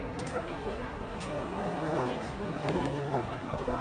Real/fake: fake